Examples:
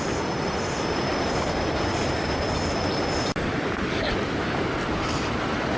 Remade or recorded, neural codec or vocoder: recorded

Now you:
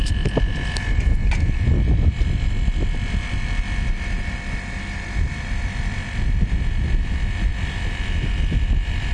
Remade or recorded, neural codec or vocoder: recorded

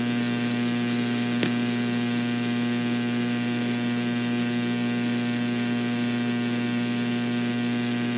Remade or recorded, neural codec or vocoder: recorded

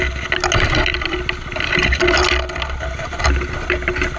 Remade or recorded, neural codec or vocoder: recorded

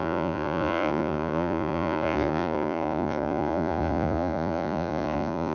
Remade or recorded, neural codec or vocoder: remade, vocoder, Vocos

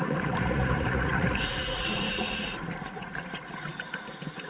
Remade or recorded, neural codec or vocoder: remade, vocoder, Vocos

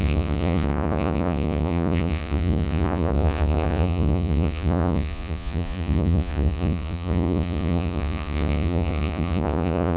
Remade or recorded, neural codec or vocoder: remade, vocoder, Vocos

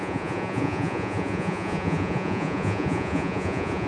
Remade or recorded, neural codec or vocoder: remade, vocoder, Vocos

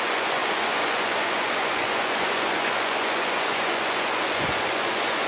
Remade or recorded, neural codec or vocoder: remade, vocoder, Vocos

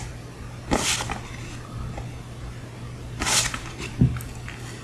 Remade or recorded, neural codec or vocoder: recorded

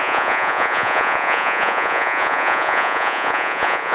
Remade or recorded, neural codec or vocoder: remade, vocoder, Vocos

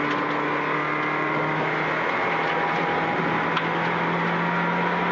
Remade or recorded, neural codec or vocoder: recorded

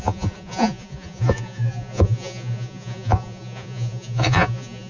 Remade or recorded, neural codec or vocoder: remade, vocoder, Vocos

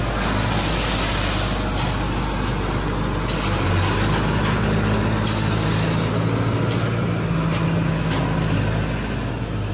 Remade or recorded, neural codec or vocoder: recorded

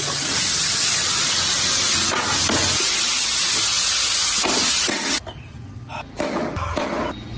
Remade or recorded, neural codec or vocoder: recorded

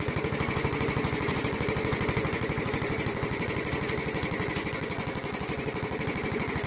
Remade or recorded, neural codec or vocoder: remade, vocoder, Vocos